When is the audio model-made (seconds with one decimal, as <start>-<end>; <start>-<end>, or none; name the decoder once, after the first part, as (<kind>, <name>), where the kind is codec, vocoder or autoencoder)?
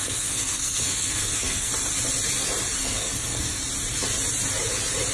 0.0-1.7 (codec, SNAC); 2.8-3.6